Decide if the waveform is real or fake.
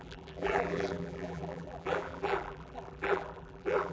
fake